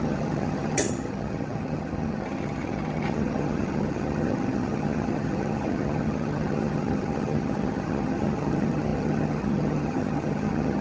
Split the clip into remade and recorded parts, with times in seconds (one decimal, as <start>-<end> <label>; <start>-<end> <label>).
0.0-10.8 remade